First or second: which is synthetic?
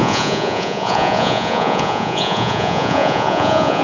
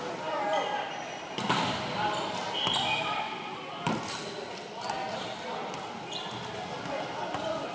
first